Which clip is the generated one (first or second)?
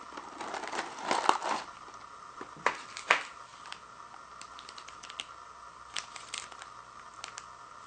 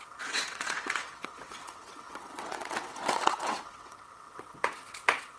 second